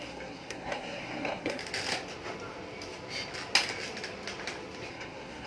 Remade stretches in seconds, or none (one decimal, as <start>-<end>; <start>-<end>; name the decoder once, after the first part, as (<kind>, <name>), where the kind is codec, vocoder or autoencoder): 0.0-1.6 (codec, SNAC); 4.9-5.5